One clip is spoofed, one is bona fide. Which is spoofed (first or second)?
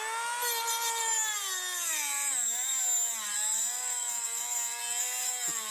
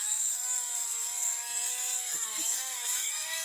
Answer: second